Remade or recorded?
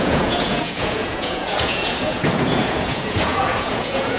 remade